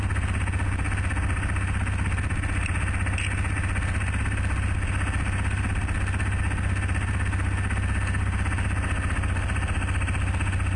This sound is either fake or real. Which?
real